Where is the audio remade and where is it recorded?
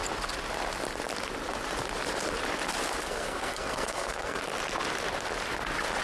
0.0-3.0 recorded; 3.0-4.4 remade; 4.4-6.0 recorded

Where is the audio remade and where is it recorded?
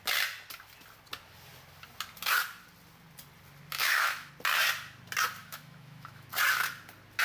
0.0-3.7 recorded; 3.7-4.3 remade; 4.3-5.4 recorded; 5.4-6.3 remade; 6.3-7.2 recorded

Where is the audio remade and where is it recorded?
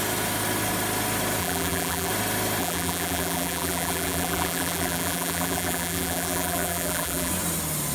0.0-1.4 recorded; 1.4-2.1 remade; 2.1-2.6 recorded; 2.6-7.3 remade; 7.3-7.9 recorded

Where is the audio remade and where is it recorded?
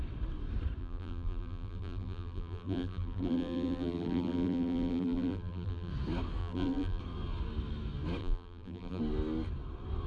0.0-0.8 recorded; 0.8-5.9 remade; 5.9-6.4 recorded; 6.4-7.0 remade; 7.0-8.2 recorded; 8.2-9.0 remade; 9.0-10.1 recorded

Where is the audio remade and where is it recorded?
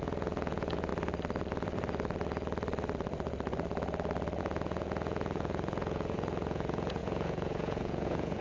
0.0-0.9 remade; 0.9-4.4 recorded; 4.4-8.4 remade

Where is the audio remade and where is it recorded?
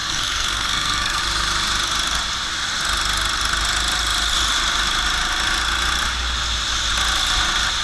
0.0-1.2 remade; 1.2-7.8 recorded